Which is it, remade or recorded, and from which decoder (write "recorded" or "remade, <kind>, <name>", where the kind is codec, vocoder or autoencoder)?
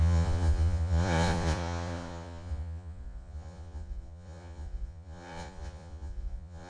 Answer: remade, vocoder, Vocos